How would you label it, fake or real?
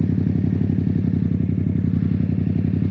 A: real